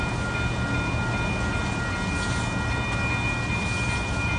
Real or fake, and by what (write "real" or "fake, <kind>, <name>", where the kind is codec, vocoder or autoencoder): real